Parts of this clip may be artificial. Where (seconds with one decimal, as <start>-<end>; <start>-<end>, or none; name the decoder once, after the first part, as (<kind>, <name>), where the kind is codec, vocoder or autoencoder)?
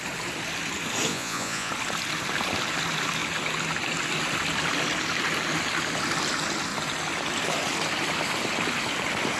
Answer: 1.1-1.7 (vocoder, Vocos)